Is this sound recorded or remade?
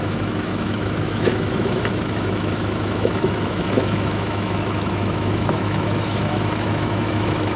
remade